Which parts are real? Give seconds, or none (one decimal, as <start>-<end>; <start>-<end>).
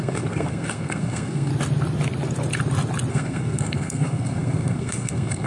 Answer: 1.5-3.1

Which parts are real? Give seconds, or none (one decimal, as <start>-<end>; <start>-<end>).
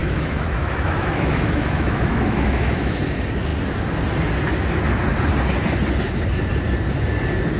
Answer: 3.0-7.6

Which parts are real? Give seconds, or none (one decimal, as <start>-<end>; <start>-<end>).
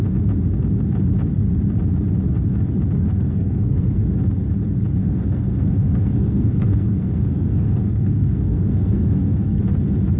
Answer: 0.0-3.1; 4.0-5.0; 9.6-10.2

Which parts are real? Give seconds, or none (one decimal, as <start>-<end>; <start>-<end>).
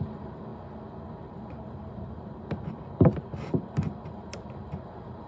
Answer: 0.5-1.3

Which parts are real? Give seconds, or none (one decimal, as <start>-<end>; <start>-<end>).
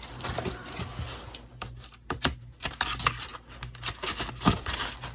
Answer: 0.0-5.1